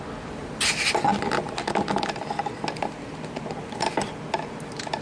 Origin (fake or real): real